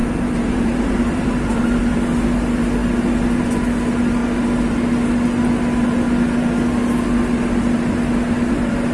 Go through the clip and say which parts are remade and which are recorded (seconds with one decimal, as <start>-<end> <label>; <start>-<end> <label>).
0.0-1.8 remade; 1.8-8.9 recorded

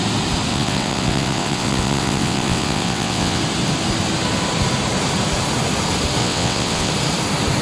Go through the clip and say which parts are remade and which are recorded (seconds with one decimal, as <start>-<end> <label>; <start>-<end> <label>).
0.0-0.5 recorded; 0.5-3.4 remade; 3.4-6.2 recorded; 6.2-6.9 remade; 6.9-7.6 recorded

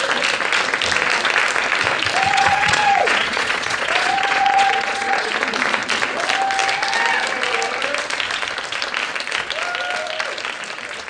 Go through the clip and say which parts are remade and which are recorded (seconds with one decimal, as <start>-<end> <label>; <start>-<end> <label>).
0.0-2.3 recorded; 2.3-5.3 remade; 5.3-11.1 recorded

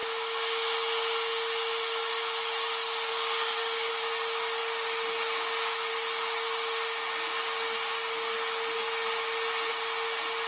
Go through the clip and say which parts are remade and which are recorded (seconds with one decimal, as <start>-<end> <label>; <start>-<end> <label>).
0.0-3.1 recorded; 3.1-3.9 remade; 3.9-10.5 recorded